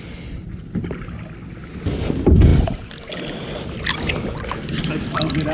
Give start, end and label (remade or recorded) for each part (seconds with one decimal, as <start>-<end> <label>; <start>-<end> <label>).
0.0-5.5 recorded